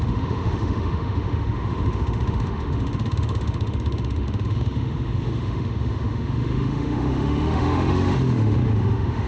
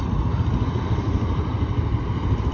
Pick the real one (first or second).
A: second